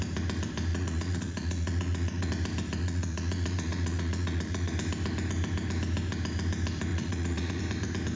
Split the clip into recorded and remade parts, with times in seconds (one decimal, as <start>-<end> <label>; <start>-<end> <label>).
0.0-0.7 recorded; 0.7-2.3 remade; 2.3-2.8 recorded; 2.8-4.7 remade; 4.7-6.9 recorded; 6.9-7.6 remade; 7.6-8.2 recorded

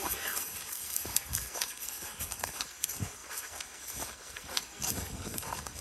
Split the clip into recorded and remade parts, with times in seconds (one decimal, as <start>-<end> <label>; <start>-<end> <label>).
0.0-5.8 remade

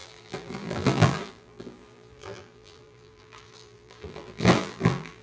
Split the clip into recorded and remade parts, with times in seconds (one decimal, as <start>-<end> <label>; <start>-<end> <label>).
0.0-5.2 remade

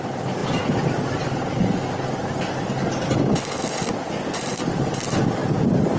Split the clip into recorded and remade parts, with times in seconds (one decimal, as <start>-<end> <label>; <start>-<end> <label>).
0.0-6.0 recorded

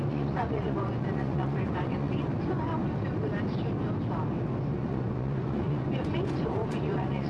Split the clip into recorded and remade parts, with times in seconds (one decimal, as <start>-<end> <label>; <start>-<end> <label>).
0.0-2.3 remade; 2.3-4.7 recorded; 4.7-7.3 remade